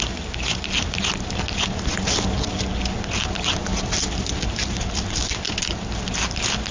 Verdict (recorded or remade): recorded